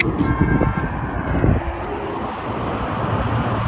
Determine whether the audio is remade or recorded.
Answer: recorded